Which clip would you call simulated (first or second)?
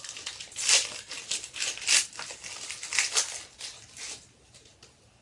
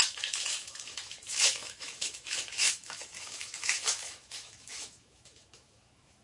second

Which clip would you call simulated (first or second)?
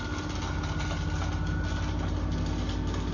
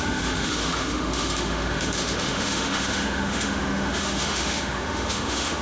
second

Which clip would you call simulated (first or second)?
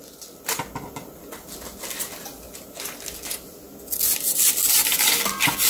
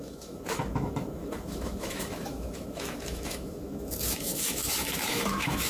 second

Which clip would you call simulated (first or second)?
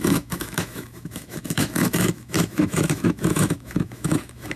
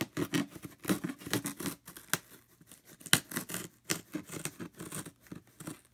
first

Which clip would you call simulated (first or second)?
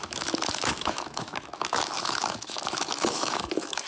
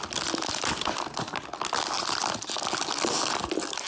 first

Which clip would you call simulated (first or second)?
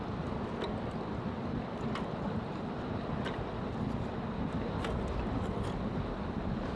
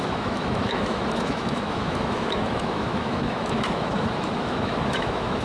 second